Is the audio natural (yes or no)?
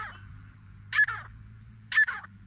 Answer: no